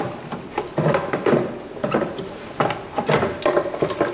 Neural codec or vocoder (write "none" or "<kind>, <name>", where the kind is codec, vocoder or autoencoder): none